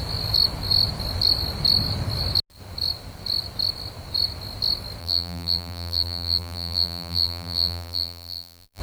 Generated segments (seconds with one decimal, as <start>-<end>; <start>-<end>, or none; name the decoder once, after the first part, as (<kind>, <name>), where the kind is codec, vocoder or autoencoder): 5.0-8.8 (vocoder, BigVGAN v2)